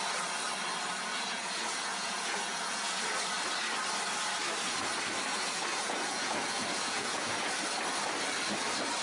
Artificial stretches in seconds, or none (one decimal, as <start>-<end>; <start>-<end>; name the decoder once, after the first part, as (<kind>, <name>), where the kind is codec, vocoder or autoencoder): 1.1-3.0 (vocoder, Vocos); 5.3-7.5